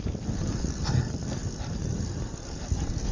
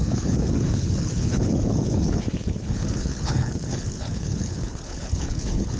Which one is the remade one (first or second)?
second